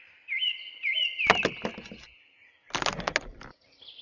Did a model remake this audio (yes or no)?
no